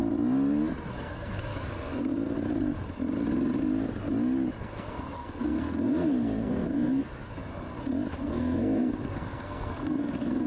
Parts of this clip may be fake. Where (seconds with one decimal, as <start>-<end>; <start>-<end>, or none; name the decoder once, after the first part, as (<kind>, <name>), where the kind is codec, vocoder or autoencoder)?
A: 0.9-2.1 (codec, SNAC); 4.6-7.0; 8.2-10.5